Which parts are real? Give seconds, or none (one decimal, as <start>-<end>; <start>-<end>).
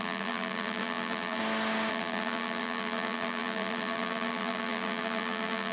1.4-1.9